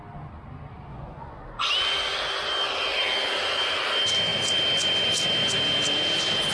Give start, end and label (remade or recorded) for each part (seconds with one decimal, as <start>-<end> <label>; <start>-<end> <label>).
0.0-0.9 recorded; 0.9-1.7 remade; 1.7-6.5 recorded

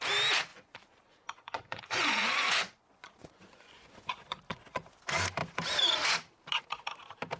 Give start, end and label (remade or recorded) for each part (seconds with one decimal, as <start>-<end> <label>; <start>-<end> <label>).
0.0-0.5 recorded; 0.5-4.9 remade; 4.9-7.4 recorded

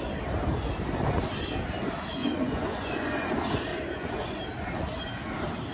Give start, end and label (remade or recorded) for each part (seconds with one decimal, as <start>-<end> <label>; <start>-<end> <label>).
0.0-2.2 recorded; 2.2-3.3 remade; 3.3-3.7 recorded; 3.7-4.4 remade; 4.4-5.7 recorded

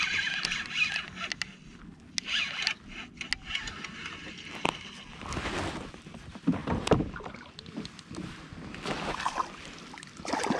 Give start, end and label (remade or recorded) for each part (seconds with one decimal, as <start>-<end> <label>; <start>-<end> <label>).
0.0-10.6 recorded

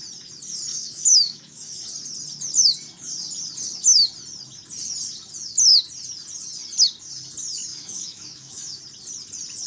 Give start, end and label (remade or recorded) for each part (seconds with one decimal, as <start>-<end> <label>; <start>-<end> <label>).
0.0-0.7 recorded; 0.7-1.8 remade; 1.8-7.7 recorded; 7.7-8.8 remade; 8.8-9.7 recorded